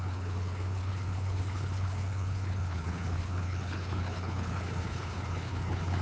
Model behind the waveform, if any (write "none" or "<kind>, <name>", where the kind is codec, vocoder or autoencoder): codec, HILCodec